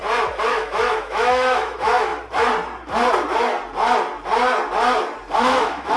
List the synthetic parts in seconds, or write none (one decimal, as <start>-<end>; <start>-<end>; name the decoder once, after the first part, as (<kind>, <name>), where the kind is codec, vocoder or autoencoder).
0.5-2.1 (autoencoder, DAC-VAE); 5.4-6.0